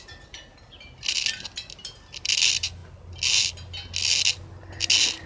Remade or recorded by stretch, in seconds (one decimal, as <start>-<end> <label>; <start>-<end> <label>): 0.0-5.3 recorded